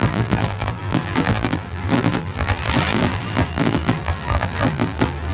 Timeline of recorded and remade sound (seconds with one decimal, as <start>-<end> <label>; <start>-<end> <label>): 0.0-5.3 remade